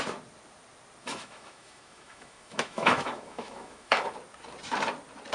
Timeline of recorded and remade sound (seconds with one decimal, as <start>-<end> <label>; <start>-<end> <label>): 0.0-1.0 recorded; 1.0-4.0 remade; 4.0-5.3 recorded